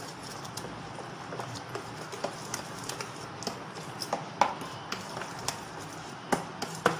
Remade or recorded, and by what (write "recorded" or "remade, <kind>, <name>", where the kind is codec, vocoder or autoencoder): recorded